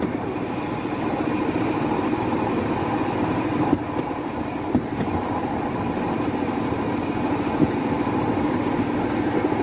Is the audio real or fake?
real